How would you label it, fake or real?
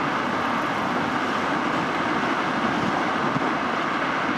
real